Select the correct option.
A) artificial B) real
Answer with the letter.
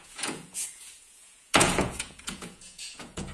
A